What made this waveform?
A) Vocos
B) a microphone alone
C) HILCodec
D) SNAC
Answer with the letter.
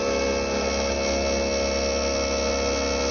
B